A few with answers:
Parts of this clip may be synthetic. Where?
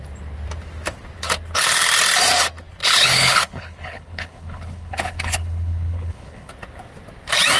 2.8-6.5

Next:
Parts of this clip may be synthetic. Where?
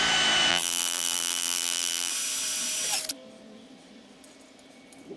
0.5-2.1